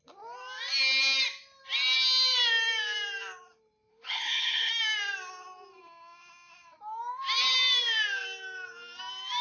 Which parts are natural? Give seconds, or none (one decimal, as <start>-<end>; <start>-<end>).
0.0-3.9; 4.7-9.4

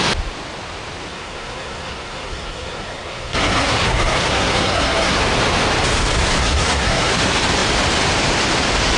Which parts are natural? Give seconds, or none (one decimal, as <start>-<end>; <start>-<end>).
0.0-1.1; 5.2-6.4; 7.1-9.0

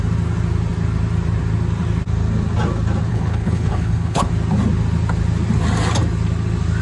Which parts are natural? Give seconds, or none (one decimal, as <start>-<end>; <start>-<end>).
0.0-3.1; 4.3-6.8

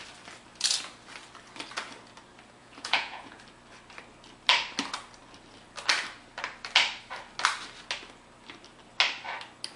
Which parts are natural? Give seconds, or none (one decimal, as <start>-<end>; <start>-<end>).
0.0-2.6; 3.4-9.8

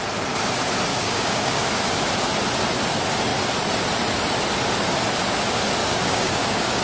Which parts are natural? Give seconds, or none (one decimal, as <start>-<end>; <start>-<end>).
0.0-0.9; 1.6-5.8

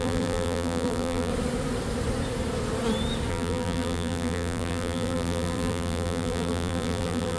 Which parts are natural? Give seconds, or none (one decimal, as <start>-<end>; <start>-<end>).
1.3-3.3

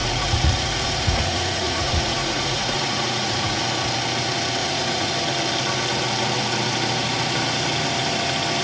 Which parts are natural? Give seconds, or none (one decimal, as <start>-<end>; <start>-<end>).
3.6-4.6; 5.1-8.6